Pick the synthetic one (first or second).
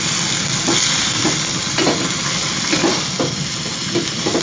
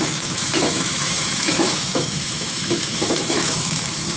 second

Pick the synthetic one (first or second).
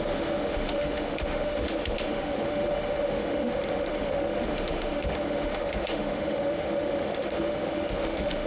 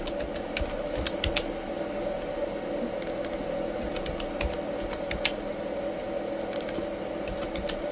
first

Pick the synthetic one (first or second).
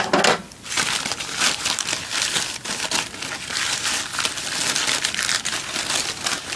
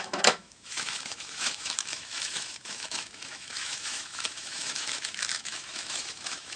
second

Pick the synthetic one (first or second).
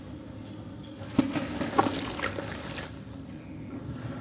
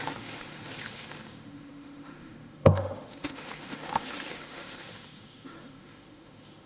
second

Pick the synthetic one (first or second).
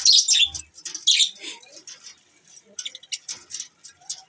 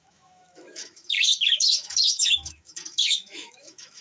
second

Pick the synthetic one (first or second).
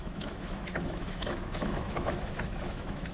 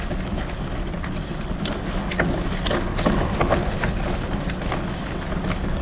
first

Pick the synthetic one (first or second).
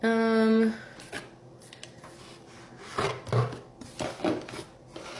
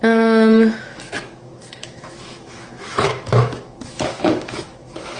second